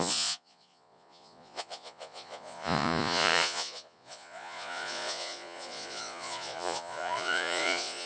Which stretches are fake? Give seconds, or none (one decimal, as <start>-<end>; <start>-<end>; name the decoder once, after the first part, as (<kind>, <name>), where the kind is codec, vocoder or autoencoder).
0.0-8.1 (vocoder, Vocos)